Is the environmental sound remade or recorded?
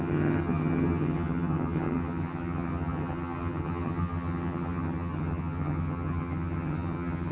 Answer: remade